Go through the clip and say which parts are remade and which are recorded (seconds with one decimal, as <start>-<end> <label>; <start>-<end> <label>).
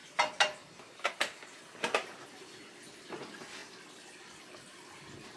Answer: 0.0-5.4 recorded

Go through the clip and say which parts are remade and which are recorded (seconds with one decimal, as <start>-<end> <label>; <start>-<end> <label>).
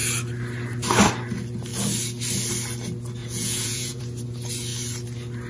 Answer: 0.0-3.2 recorded; 3.2-4.0 remade; 4.0-5.5 recorded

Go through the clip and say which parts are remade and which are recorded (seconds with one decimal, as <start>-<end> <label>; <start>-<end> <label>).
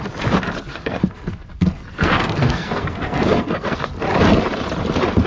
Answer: 0.0-0.7 recorded; 0.7-3.9 remade; 3.9-5.3 recorded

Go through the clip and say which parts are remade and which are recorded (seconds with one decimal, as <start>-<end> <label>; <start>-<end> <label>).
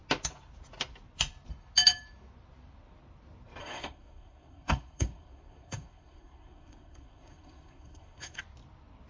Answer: 0.0-3.6 recorded; 3.6-8.4 remade; 8.4-9.1 recorded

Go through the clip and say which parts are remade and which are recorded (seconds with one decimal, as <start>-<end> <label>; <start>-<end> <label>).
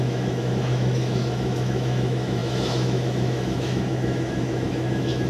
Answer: 0.0-5.3 remade